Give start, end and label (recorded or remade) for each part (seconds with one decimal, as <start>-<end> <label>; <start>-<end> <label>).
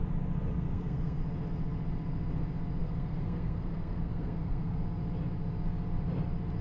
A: 0.0-0.6 recorded; 0.6-1.2 remade; 1.2-2.8 recorded; 2.8-4.8 remade; 4.8-6.6 recorded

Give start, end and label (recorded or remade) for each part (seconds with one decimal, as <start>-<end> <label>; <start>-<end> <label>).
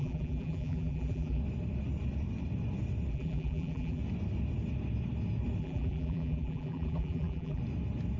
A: 0.0-1.4 remade; 1.4-3.1 recorded; 3.1-4.0 remade; 4.0-5.6 recorded; 5.6-7.6 remade; 7.6-8.2 recorded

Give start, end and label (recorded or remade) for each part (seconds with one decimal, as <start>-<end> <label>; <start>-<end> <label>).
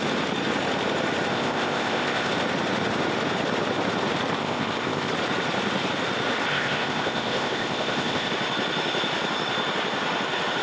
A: 0.0-1.3 recorded; 1.3-2.3 remade; 2.3-4.4 recorded; 4.4-5.1 remade; 5.1-6.5 recorded; 6.5-8.3 remade; 8.3-10.6 recorded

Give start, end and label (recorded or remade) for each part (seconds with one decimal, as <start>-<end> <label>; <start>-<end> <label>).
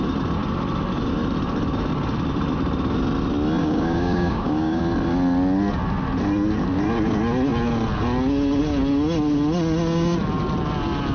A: 0.0-3.6 recorded; 3.6-4.8 remade; 4.8-11.1 recorded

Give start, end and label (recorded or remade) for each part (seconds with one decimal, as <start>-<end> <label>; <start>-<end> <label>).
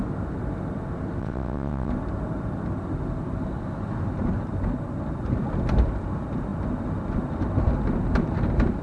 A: 0.0-1.2 recorded; 1.2-1.9 remade; 1.9-8.8 recorded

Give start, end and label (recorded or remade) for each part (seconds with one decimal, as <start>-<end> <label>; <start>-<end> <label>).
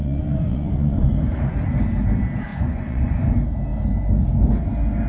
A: 0.0-1.1 remade; 1.1-2.5 recorded; 2.5-3.2 remade; 3.2-5.1 recorded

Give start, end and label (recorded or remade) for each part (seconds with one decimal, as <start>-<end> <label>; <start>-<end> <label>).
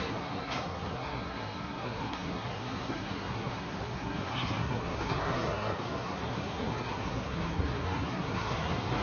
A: 0.0-9.0 remade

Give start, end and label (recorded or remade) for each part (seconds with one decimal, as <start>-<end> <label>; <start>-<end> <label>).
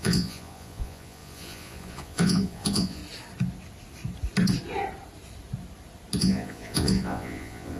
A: 0.0-3.0 remade; 3.0-6.2 recorded; 6.2-7.8 remade